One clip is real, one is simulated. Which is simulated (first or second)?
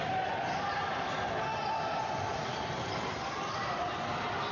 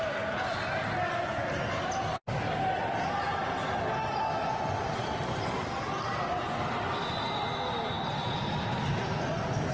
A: first